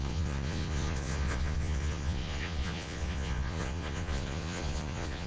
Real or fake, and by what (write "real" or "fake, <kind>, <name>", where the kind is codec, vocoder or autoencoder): fake, vocoder, Vocos